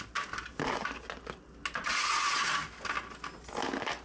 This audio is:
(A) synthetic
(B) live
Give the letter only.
B